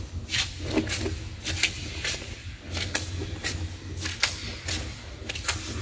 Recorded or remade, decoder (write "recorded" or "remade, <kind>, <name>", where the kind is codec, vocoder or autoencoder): recorded